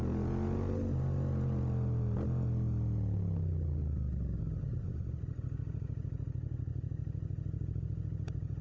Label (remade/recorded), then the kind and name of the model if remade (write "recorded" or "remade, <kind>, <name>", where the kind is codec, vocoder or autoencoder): recorded